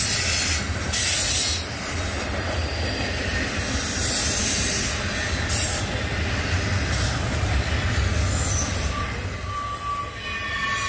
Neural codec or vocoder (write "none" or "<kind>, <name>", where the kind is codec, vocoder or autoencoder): none